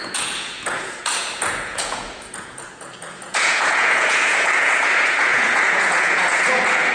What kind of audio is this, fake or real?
fake